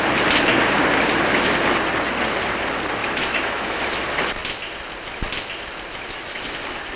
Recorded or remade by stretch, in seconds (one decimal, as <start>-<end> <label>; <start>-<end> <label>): 0.0-3.0 recorded; 3.0-3.8 remade; 3.8-7.0 recorded

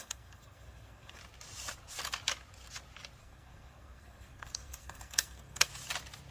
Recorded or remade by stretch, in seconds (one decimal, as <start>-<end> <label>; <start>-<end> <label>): 0.0-1.2 remade; 1.2-3.2 recorded; 3.2-5.7 remade; 5.7-6.3 recorded

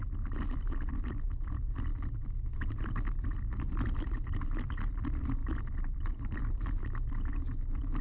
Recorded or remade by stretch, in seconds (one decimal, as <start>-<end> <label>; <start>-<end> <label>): 0.0-8.0 recorded

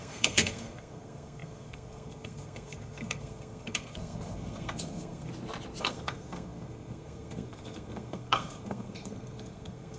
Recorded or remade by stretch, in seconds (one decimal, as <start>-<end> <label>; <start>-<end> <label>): 0.0-5.3 remade; 5.3-5.8 recorded; 5.8-10.0 remade

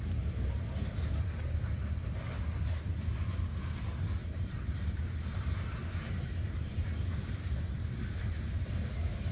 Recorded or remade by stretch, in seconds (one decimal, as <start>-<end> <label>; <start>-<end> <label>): 0.0-4.2 recorded; 4.2-9.3 remade

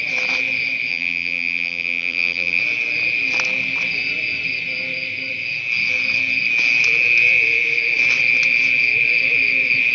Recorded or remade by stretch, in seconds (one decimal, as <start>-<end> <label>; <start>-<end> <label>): 0.0-0.9 recorded; 0.9-2.6 remade; 2.6-9.9 recorded

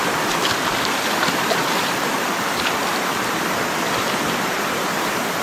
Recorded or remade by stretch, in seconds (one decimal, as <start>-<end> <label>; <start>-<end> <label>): 0.0-5.4 remade